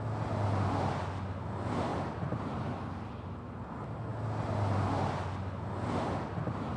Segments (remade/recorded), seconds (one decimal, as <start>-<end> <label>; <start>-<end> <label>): 0.0-1.9 recorded; 1.9-2.9 remade; 2.9-6.8 recorded